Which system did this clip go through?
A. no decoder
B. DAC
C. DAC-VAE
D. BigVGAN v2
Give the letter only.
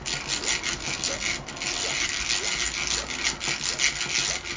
A